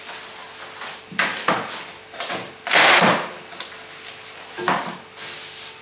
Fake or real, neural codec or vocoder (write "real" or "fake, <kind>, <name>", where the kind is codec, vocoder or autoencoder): real